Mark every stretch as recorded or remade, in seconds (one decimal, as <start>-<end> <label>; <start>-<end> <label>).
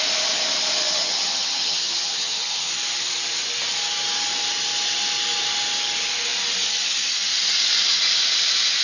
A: 0.0-0.8 recorded; 0.8-2.7 remade; 2.7-8.8 recorded